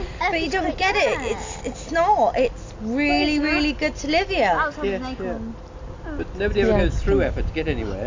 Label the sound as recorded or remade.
recorded